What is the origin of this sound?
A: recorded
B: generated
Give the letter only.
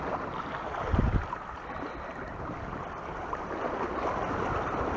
A